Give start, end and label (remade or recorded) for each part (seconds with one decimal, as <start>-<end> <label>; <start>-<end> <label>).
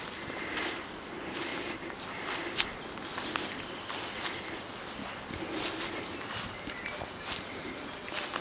0.0-8.4 recorded